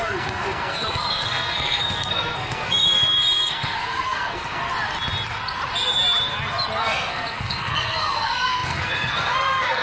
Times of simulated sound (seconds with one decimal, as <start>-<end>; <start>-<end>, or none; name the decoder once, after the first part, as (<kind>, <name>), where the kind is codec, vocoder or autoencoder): 0.0-4.6 (codec, SNAC); 6.8-9.8